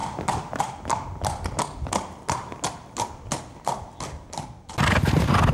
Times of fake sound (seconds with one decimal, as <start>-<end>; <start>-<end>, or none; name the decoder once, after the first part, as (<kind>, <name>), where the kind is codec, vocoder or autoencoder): none